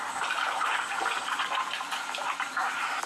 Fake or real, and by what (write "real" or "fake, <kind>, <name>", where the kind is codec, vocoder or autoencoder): real